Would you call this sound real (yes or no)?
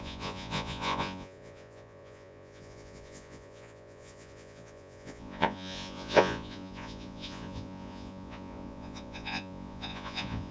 no